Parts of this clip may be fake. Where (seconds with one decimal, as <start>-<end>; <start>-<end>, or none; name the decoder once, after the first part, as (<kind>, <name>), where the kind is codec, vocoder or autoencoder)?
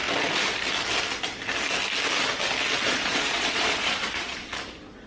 2.8-4.5 (vocoder, Vocos)